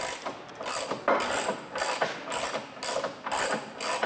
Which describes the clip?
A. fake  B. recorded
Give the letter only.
B